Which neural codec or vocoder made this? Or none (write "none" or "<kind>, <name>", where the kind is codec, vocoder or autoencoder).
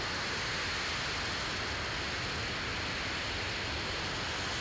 none